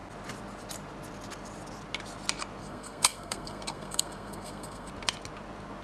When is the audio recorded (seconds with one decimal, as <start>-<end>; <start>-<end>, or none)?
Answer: 0.0-2.6; 4.9-5.8